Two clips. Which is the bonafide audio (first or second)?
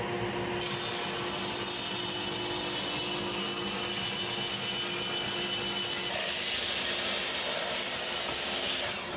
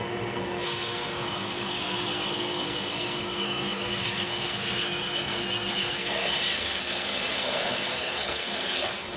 first